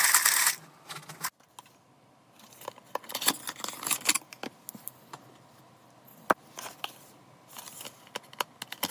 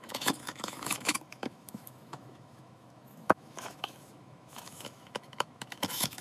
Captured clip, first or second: first